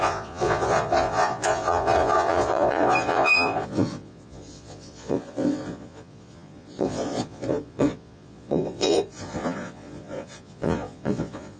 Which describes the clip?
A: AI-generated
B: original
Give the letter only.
A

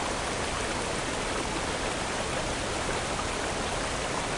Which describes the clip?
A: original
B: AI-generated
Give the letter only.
A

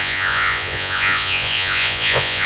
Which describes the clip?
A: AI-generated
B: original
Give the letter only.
A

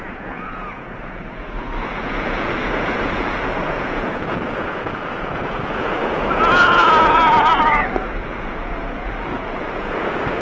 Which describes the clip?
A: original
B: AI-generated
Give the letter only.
B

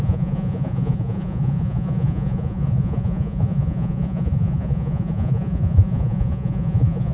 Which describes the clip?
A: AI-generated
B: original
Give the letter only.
A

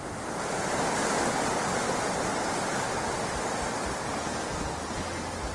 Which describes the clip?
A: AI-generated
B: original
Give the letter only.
B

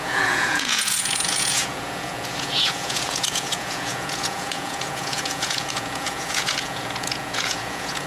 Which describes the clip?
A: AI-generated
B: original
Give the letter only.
A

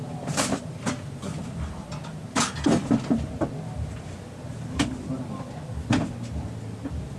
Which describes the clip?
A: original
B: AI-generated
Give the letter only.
A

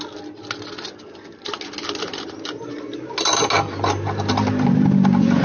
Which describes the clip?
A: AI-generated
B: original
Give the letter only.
B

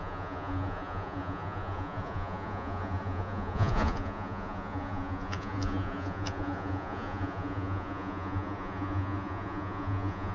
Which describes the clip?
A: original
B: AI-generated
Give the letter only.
B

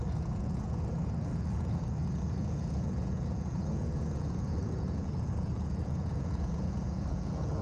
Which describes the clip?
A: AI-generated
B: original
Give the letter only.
A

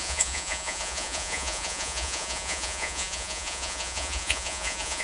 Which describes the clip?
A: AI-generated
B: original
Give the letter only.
A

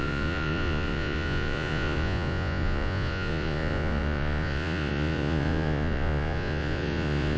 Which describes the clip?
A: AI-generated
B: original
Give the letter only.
A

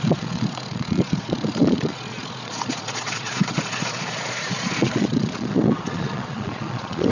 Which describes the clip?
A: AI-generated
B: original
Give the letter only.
A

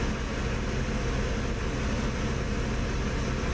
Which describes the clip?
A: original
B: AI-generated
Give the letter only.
A